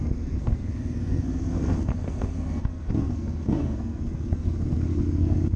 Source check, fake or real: fake